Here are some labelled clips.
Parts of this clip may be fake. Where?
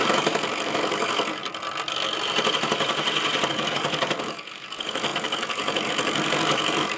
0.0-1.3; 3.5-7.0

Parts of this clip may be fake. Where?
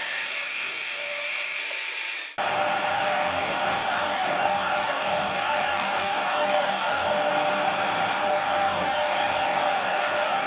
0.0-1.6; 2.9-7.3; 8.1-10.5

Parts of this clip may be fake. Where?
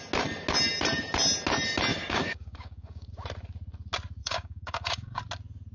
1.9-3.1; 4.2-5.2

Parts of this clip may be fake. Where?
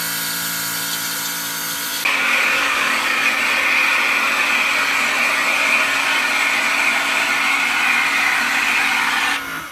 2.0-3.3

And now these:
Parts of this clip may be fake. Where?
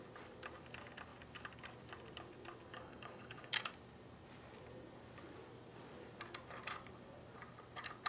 2.7-3.7